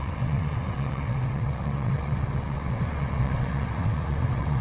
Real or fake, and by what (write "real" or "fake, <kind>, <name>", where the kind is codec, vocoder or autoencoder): fake, vocoder, WaveNeXt